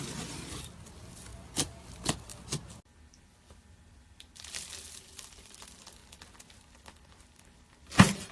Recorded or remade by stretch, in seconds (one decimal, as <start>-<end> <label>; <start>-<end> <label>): 0.0-1.3 remade; 1.3-1.9 recorded; 1.9-2.3 remade; 2.3-3.1 recorded; 3.1-6.0 remade; 6.0-8.3 recorded